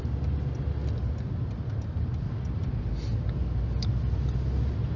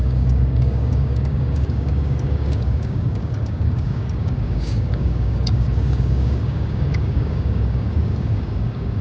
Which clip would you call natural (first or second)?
first